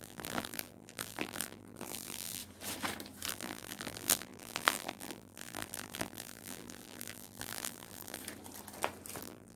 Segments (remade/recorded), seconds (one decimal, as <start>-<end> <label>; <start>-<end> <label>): 0.0-2.4 remade; 2.4-3.3 recorded; 3.3-8.2 remade; 8.2-9.2 recorded; 9.2-9.6 remade